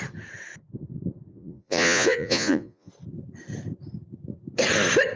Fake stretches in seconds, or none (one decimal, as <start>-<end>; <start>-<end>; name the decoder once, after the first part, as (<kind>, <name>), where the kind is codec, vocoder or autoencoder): 1.3-2.9 (vocoder, Vocos)